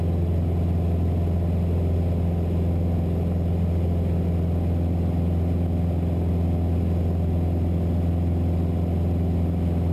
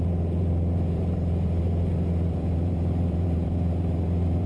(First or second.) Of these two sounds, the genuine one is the first